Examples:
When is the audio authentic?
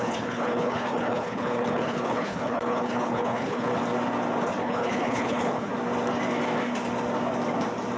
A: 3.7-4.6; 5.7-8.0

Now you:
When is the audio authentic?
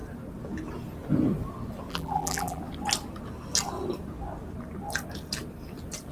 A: 0.0-1.9; 2.6-6.1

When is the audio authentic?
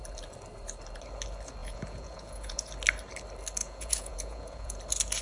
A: 0.0-1.6; 2.7-3.6; 4.8-5.2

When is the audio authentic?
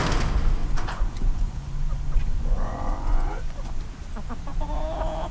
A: 0.0-0.6; 3.8-5.3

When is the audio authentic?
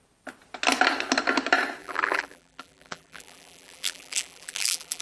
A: 0.0-1.8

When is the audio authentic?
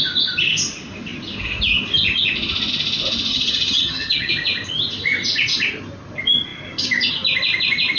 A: 0.0-3.3; 4.3-8.0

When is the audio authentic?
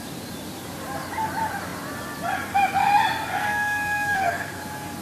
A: 0.0-3.4; 4.6-5.0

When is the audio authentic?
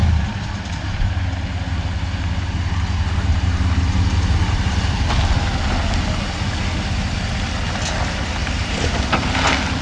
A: 1.3-3.3; 4.9-8.4; 9.4-9.8